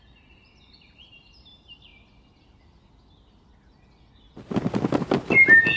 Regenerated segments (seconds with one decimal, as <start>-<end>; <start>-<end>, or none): 0.0-1.9